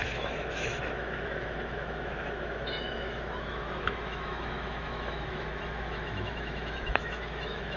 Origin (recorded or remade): remade